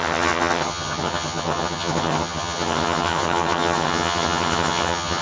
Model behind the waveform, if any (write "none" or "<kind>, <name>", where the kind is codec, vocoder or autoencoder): vocoder, HiFi-GAN